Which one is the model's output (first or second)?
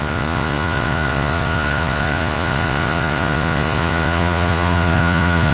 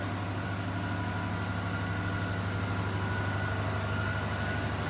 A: first